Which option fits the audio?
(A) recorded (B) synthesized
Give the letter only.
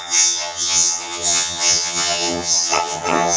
B